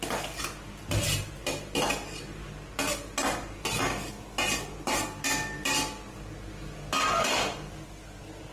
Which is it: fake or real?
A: real